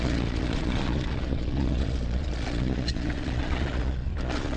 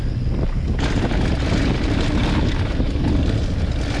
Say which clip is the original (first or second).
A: second